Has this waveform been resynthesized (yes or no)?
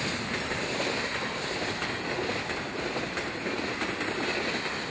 no